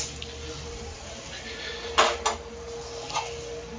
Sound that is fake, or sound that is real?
real